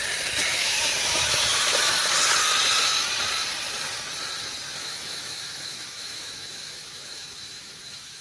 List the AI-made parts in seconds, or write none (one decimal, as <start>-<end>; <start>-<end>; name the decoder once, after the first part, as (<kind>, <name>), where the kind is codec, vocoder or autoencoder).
0.4-1.8 (autoencoder, DAC-VAE); 4.8-8.2